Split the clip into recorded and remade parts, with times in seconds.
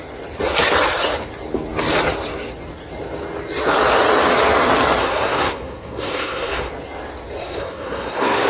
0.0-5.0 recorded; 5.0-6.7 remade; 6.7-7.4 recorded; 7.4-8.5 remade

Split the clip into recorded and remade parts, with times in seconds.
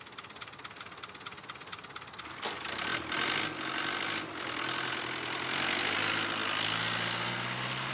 0.0-7.9 recorded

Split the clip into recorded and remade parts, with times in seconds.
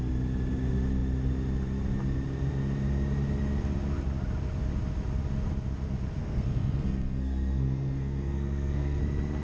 0.0-6.2 recorded; 6.2-9.0 remade; 9.0-9.4 recorded